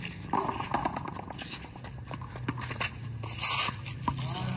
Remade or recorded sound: recorded